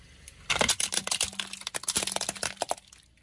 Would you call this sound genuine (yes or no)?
yes